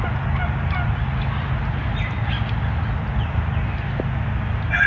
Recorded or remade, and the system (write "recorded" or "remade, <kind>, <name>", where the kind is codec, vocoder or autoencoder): recorded